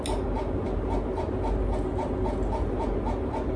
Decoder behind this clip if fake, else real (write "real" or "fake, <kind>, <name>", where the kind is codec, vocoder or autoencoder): real